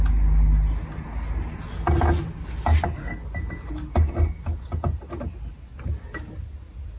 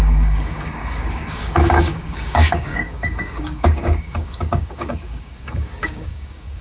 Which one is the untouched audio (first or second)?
first